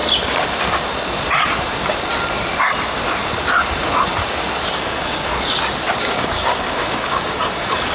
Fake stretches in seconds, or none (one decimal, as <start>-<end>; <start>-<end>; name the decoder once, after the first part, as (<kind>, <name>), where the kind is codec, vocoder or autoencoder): 4.7-5.3 (codec, DAC); 6.0-7.9